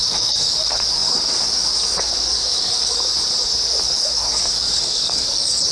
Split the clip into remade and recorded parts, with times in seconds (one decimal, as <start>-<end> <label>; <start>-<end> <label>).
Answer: 0.0-3.1 remade; 3.1-3.8 recorded; 3.8-5.7 remade